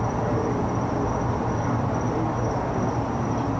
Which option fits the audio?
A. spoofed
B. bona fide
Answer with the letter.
B